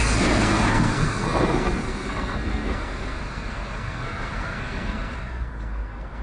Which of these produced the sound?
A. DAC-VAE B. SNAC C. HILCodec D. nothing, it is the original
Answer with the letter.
B